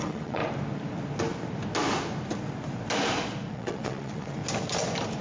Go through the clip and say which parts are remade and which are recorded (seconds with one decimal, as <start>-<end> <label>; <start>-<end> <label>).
0.0-0.4 remade; 0.4-3.5 recorded; 3.5-4.4 remade; 4.4-5.2 recorded